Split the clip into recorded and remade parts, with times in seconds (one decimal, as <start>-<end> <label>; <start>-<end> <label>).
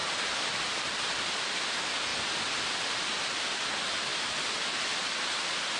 0.0-5.8 recorded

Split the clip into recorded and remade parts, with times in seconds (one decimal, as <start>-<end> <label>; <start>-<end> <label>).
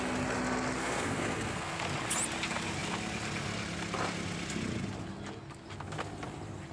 0.0-0.8 recorded; 0.8-1.8 remade; 1.8-6.7 recorded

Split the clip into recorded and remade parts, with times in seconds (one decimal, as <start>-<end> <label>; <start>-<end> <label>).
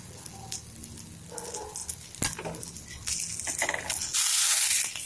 0.0-5.1 recorded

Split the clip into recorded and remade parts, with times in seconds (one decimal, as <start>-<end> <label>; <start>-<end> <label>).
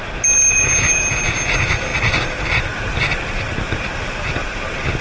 0.0-5.0 recorded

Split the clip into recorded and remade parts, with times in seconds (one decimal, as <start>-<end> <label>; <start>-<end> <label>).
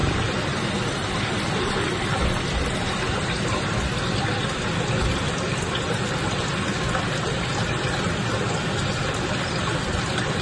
0.0-3.0 remade; 3.0-10.4 recorded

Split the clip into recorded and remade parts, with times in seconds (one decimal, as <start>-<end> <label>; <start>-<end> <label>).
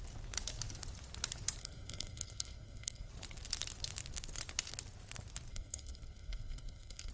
0.0-1.6 recorded; 1.6-3.1 remade; 3.1-5.5 recorded; 5.5-7.1 remade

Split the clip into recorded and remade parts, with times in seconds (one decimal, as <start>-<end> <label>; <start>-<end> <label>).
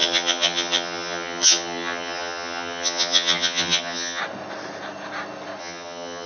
0.0-4.2 remade; 4.2-5.6 recorded; 5.6-6.3 remade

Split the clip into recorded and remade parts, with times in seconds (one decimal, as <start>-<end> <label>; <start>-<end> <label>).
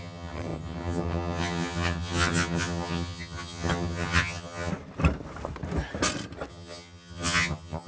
0.0-4.7 remade; 4.7-6.5 recorded; 6.5-7.9 remade